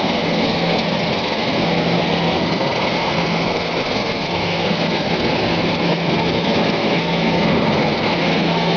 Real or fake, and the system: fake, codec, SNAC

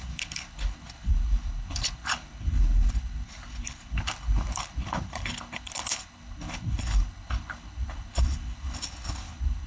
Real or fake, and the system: fake, codec, HILCodec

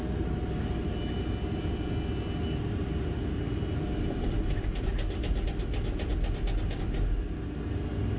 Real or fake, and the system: real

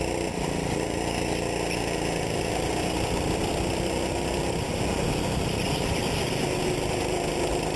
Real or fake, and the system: real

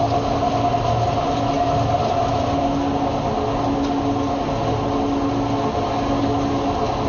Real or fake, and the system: real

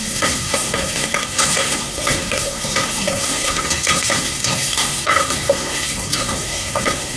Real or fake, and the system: fake, codec, SNAC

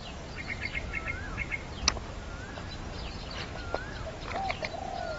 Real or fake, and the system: real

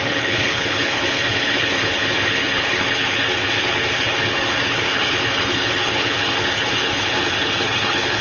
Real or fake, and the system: fake, codec, HILCodec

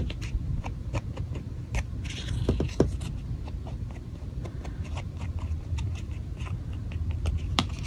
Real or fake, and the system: fake, vocoder, BigVGAN v2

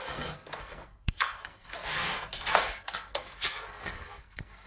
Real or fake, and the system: fake, codec, SNAC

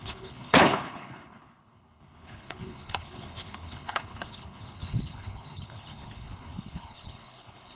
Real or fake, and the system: fake, codec, HILCodec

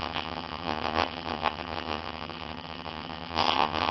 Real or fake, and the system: fake, vocoder, HiFi-GAN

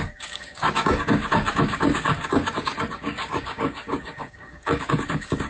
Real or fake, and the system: fake, codec, DAC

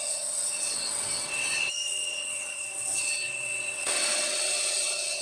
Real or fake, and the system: fake, vocoder, WaveNeXt